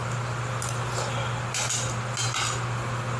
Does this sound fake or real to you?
real